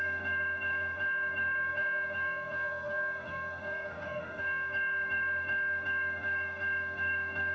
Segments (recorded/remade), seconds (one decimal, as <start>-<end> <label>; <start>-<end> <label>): 0.0-7.5 remade